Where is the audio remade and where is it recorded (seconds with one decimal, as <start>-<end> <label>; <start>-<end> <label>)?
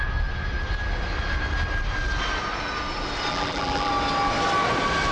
0.0-3.3 recorded; 3.3-3.9 remade; 3.9-5.1 recorded